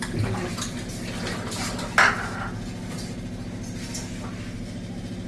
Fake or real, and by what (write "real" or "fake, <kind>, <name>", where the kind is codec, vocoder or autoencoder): real